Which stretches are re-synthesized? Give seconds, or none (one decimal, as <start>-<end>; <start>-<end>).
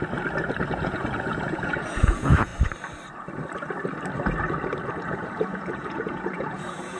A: 0.6-2.5; 4.9-7.0